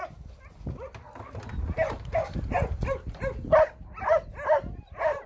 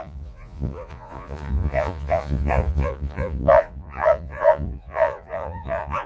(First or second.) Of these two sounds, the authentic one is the first